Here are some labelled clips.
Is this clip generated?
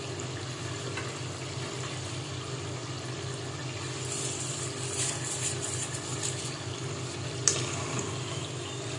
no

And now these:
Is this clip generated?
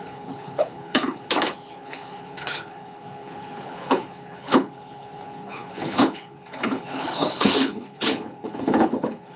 yes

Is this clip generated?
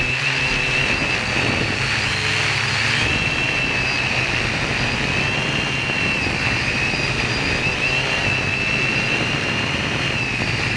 no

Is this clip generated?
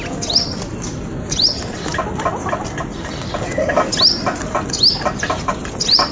no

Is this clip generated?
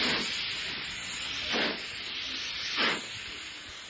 no